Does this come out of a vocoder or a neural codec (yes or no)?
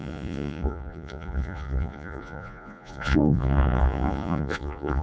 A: yes